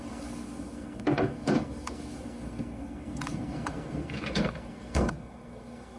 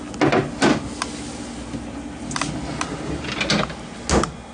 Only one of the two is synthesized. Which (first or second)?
first